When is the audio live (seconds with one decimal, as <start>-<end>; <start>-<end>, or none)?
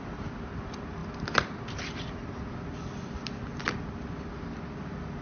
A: 0.0-5.2